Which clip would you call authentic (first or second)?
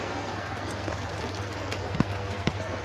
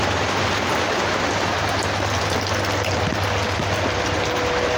second